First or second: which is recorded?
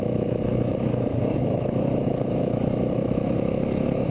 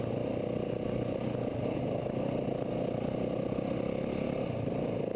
second